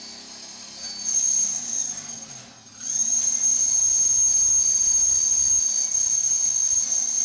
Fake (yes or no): no